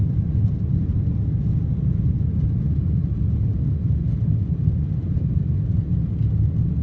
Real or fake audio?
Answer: real